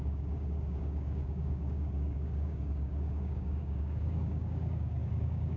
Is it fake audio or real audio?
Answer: fake